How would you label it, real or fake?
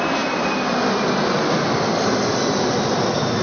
real